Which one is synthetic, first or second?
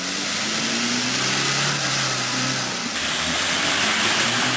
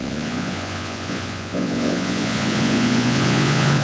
second